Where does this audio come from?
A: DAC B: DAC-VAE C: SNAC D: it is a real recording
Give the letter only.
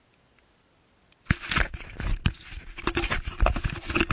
D